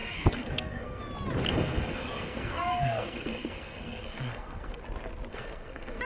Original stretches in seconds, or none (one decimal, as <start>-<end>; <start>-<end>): 1.0-1.5; 4.8-5.3